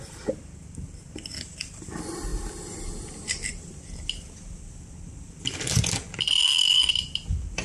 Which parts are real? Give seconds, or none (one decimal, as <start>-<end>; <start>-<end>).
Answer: 0.0-6.4; 6.9-7.6